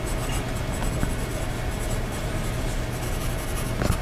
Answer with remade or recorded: recorded